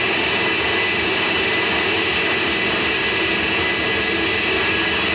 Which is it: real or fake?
real